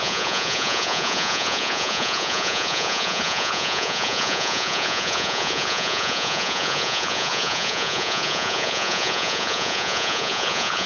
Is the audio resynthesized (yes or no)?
yes